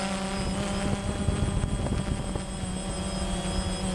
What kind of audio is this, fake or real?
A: real